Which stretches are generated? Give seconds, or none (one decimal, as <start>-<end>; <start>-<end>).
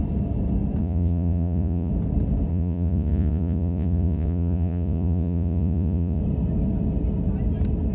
0.8-1.9; 2.5-6.2